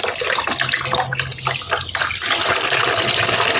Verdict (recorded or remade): recorded